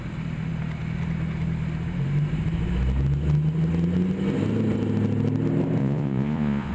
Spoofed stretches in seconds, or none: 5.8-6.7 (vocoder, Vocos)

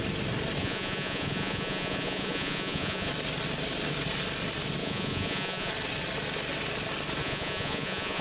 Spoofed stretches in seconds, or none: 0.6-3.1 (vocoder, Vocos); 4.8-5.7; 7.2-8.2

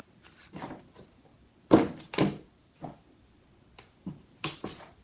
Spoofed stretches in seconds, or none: none

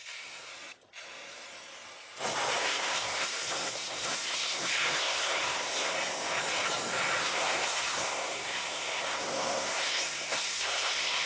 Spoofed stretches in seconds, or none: 0.0-0.5 (codec, SNAC); 2.6-5.9; 7.2-11.3

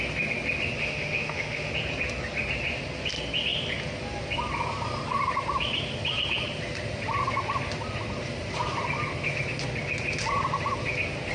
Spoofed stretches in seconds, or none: 0.8-1.7 (autoencoder, DAC-VAE)